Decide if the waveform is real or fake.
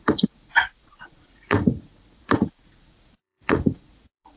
fake